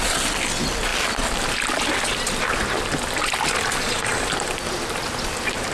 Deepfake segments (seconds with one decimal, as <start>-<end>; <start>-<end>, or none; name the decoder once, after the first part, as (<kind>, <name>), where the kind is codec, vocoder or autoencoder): none